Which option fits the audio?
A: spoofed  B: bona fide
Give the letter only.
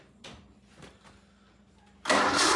B